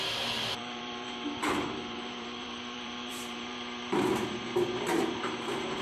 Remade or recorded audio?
remade